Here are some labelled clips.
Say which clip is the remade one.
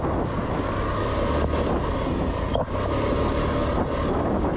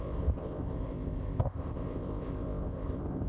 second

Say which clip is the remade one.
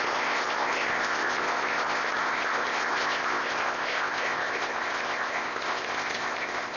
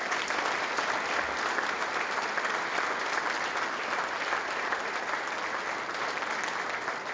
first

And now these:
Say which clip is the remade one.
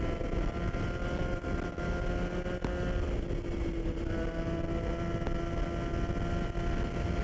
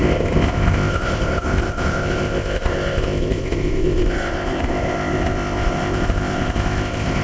second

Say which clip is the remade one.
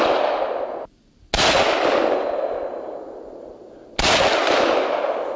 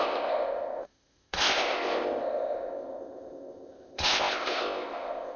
second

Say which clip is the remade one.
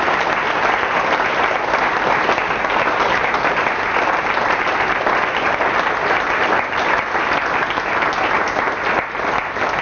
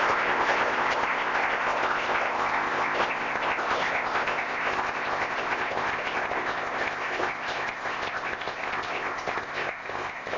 second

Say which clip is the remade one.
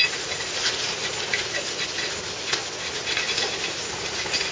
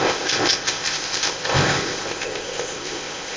second